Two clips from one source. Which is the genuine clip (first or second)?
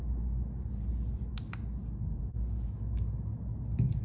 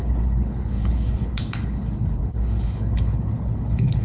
first